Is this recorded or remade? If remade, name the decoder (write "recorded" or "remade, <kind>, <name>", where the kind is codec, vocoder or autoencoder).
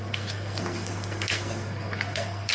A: remade, codec, SNAC